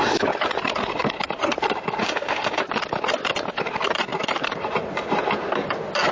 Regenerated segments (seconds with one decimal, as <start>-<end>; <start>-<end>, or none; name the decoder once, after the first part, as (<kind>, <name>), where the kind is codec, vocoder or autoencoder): 2.0-2.6 (autoencoder, DAC-VAE)